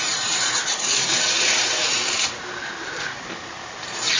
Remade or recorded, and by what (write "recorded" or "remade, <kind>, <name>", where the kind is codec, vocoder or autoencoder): remade, vocoder, BigVGAN v2